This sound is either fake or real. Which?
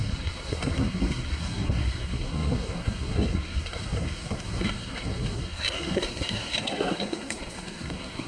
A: fake